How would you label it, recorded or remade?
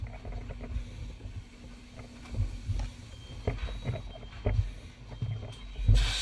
recorded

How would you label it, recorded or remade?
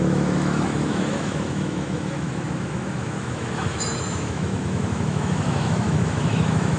remade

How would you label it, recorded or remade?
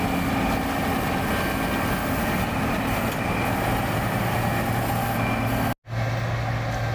recorded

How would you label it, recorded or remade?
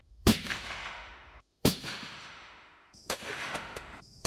remade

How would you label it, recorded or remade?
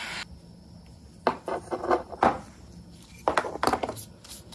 recorded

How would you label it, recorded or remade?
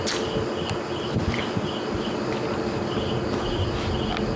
recorded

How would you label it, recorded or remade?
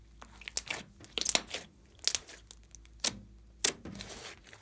recorded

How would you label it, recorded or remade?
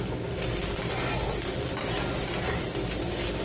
recorded